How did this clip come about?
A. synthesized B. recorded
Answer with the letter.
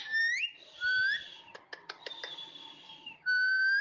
B